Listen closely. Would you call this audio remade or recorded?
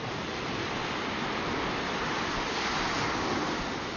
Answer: recorded